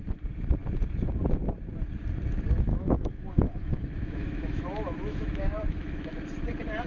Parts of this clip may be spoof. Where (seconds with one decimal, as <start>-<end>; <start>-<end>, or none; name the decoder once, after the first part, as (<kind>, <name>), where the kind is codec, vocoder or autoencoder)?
2.7-6.1 (autoencoder, DAC-VAE)